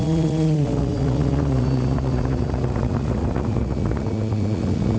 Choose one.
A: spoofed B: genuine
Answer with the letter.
A